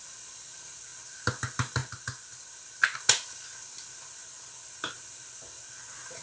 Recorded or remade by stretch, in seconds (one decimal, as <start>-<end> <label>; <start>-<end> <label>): 0.0-6.2 recorded